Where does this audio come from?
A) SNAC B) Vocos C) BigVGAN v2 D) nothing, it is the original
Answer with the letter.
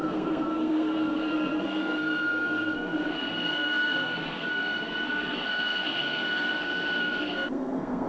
A